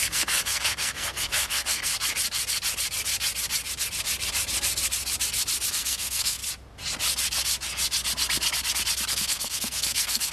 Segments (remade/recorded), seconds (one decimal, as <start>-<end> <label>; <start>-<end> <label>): 0.0-1.9 remade; 1.9-5.7 recorded; 5.7-6.4 remade; 6.4-9.1 recorded; 9.1-10.3 remade